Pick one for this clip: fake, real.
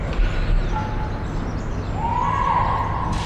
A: real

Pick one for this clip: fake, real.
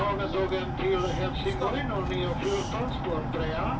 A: real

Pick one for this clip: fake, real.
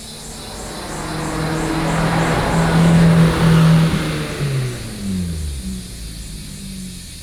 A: real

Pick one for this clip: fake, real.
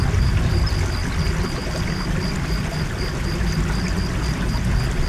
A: real